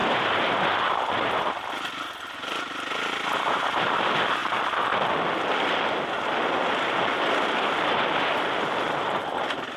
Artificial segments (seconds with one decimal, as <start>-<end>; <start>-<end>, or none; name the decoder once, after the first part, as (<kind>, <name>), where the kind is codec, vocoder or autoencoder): 0.0-1.5 (vocoder, BigVGAN v2)